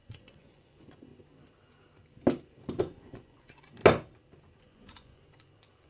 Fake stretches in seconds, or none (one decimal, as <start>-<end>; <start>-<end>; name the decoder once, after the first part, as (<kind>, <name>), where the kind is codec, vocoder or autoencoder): 0.0-1.1 (vocoder, Vocos); 2.8-3.8; 4.6-5.9